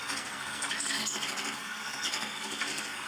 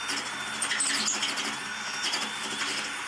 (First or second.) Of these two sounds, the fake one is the first